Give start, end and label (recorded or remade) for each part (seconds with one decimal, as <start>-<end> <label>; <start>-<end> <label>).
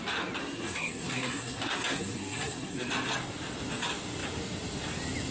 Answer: 0.0-0.4 recorded; 0.4-2.9 remade; 2.9-5.3 recorded